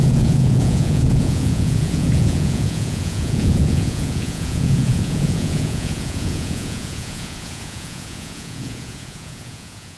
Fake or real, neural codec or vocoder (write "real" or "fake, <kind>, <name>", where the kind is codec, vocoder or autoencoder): fake, vocoder, Vocos